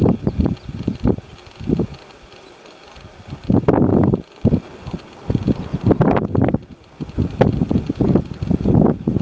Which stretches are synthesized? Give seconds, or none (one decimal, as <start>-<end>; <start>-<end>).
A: 3.9-7.4